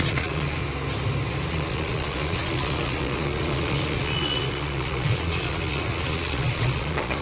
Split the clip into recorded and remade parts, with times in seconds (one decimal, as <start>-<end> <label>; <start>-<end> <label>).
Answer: 0.0-0.6 remade; 0.6-1.5 recorded; 1.5-7.2 remade